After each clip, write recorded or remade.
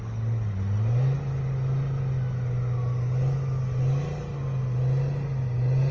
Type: recorded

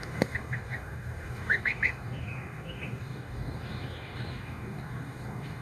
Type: remade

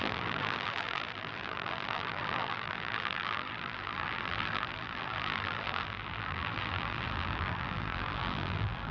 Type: remade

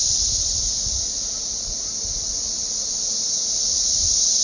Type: recorded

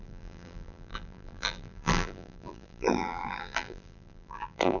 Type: remade